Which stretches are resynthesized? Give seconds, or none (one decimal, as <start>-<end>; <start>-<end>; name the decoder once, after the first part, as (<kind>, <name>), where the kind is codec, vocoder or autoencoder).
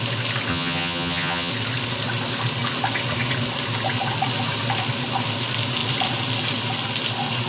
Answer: 0.5-1.5 (vocoder, HiFi-GAN)